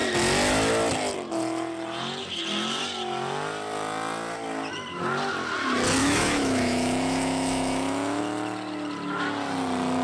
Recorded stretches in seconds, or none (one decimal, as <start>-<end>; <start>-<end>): 0.0-6.0; 8.2-10.0